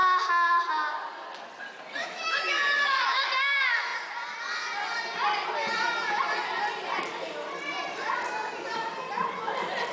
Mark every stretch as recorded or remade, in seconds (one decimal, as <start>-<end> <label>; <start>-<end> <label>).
0.0-2.0 recorded; 2.0-3.3 remade; 3.3-9.9 recorded